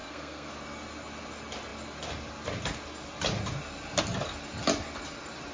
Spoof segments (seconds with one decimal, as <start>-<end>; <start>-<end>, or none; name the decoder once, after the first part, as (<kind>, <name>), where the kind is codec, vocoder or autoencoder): 0.0-0.5 (codec, SNAC)